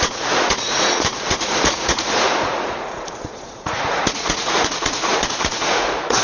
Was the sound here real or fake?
fake